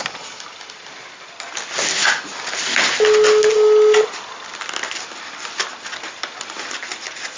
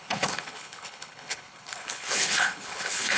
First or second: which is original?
first